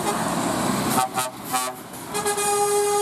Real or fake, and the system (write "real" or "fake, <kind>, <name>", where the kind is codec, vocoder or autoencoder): real